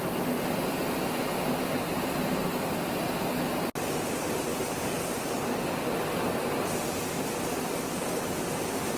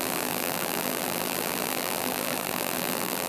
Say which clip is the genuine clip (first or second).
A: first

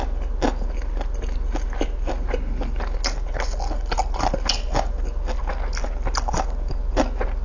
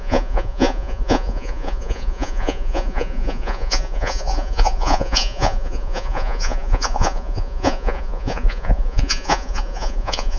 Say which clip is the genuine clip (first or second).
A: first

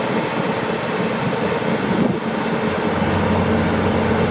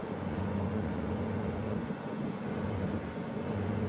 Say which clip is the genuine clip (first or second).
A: first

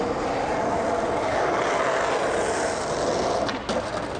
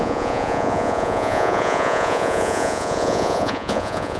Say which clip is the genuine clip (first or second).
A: first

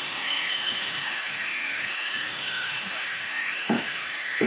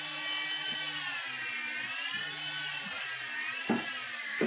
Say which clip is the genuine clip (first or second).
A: second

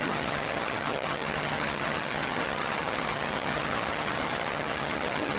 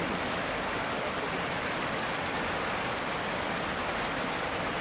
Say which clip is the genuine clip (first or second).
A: second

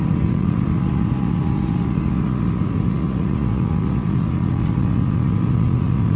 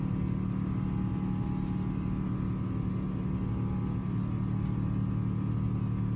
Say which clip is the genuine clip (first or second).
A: second